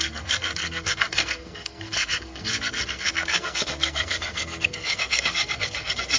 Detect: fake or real fake